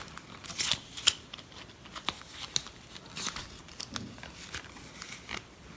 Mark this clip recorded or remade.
recorded